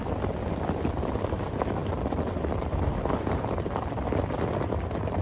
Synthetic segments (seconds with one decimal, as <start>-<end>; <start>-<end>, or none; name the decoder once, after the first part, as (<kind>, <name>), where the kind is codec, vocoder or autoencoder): 0.0-5.2 (vocoder, BigVGAN v2)